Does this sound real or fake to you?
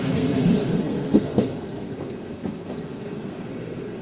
fake